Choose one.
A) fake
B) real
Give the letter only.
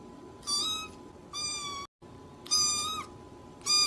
B